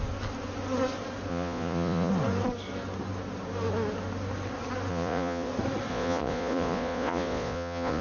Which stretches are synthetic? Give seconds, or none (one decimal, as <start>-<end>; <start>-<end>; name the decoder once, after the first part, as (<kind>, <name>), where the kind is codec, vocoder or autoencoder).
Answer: 1.3-2.1 (vocoder, Vocos); 4.9-5.5; 5.9-8.0